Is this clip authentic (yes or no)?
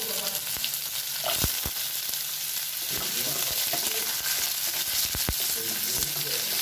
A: yes